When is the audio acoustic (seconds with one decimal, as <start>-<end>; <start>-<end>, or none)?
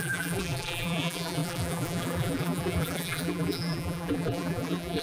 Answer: none